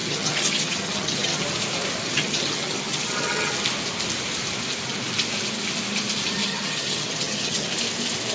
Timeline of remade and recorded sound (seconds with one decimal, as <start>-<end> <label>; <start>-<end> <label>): 0.0-1.4 remade; 1.4-2.0 recorded; 2.0-3.5 remade; 3.5-6.4 recorded; 6.4-7.7 remade; 7.7-8.3 recorded